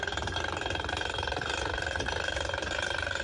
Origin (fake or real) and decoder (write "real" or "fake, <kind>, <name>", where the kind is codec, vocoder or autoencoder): real